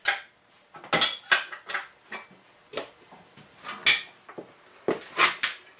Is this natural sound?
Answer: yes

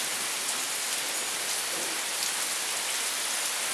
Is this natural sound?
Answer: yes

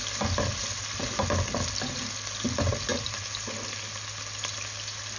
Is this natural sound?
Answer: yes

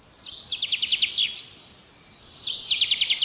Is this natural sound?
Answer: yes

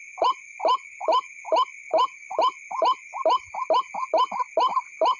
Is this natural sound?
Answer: yes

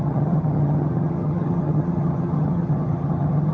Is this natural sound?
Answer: no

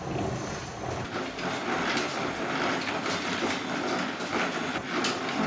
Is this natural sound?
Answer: yes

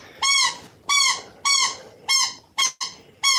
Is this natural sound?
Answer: yes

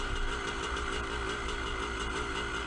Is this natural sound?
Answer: yes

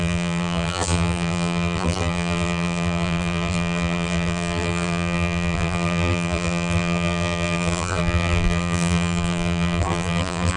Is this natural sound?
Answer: no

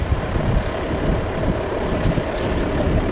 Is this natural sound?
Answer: no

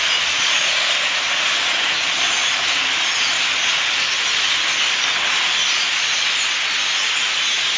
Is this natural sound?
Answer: yes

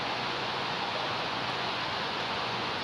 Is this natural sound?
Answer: no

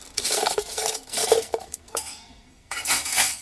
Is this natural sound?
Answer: no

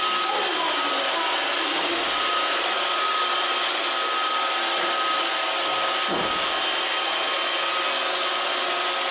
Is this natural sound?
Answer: yes